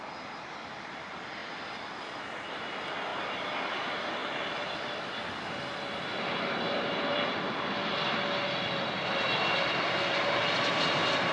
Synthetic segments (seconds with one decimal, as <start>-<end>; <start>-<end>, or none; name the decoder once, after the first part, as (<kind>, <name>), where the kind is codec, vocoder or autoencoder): 0.0-1.4 (vocoder, BigVGAN v2); 2.0-3.1; 3.7-11.3